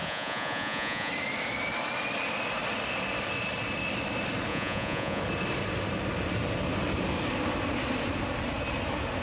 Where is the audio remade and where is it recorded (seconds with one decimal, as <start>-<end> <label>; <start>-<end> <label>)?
0.0-1.1 remade; 1.1-4.5 recorded; 4.5-5.2 remade; 5.2-9.2 recorded

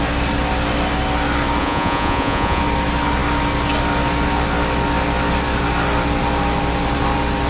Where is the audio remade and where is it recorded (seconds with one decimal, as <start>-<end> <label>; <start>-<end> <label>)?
0.0-1.6 recorded; 1.6-2.6 remade; 2.6-7.5 recorded